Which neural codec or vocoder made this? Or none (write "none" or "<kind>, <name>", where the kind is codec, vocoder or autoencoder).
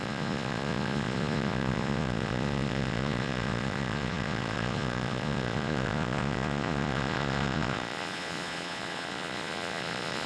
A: vocoder, Vocos